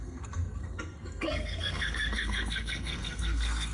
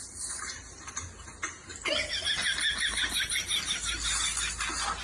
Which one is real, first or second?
second